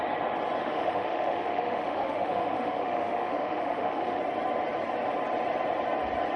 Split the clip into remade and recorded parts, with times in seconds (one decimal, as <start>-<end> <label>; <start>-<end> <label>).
0.0-0.6 recorded; 0.6-4.2 remade; 4.2-6.4 recorded